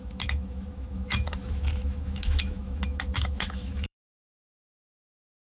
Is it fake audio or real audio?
fake